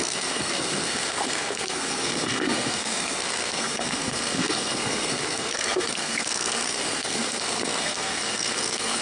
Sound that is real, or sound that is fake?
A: fake